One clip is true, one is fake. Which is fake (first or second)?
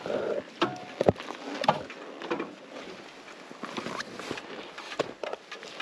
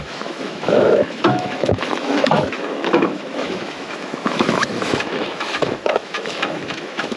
second